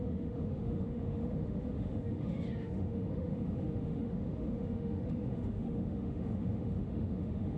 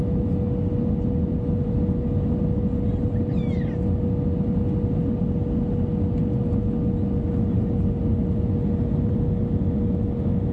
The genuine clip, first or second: second